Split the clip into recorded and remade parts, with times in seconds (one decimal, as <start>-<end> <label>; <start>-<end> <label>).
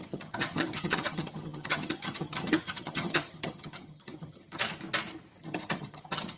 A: 0.0-4.6 remade; 4.6-5.4 recorded; 5.4-6.4 remade